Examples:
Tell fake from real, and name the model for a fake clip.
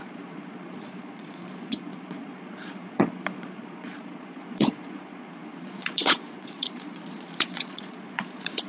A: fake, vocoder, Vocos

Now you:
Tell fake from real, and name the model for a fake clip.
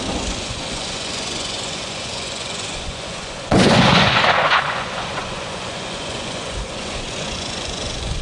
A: fake, vocoder, Vocos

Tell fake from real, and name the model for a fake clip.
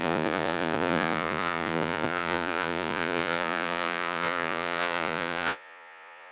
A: fake, vocoder, Vocos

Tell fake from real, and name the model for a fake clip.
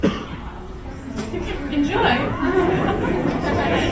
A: fake, vocoder, Vocos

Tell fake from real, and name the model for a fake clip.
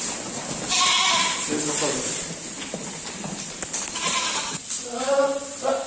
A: real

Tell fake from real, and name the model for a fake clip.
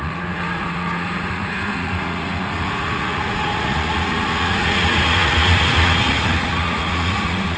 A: fake, vocoder, Vocos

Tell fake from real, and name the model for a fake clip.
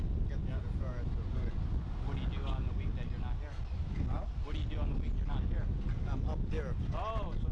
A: real